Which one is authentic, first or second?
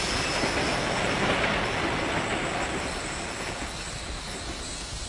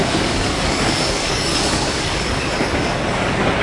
first